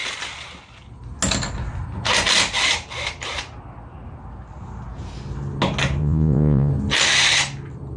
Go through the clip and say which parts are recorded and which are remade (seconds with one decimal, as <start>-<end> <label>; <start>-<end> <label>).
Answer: 0.0-6.0 recorded; 6.0-6.7 remade; 6.7-8.0 recorded